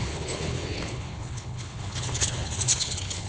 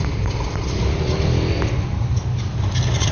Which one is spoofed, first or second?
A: first